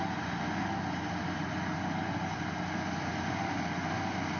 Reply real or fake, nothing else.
real